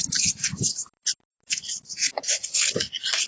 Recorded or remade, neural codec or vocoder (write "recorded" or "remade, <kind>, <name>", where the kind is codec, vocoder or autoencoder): recorded